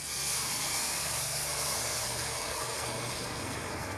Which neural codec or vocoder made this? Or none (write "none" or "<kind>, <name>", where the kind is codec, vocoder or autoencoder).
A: codec, SNAC